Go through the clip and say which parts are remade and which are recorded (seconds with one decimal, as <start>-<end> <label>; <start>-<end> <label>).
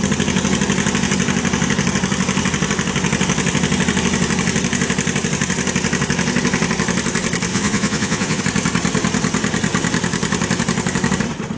0.0-7.5 recorded; 7.5-8.4 remade; 8.4-11.6 recorded